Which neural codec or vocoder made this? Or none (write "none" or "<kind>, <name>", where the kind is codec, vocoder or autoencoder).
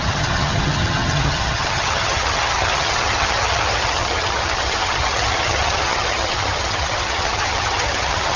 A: vocoder, HiFi-GAN